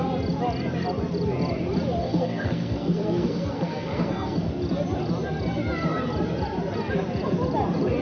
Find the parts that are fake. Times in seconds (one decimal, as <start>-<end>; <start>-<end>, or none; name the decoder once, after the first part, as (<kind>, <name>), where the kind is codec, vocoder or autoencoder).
2.0-4.5 (codec, SNAC)